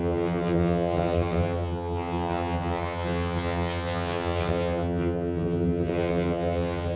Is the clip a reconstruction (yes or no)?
yes